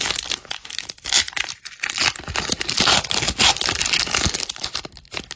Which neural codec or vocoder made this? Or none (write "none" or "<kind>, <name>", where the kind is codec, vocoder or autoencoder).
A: none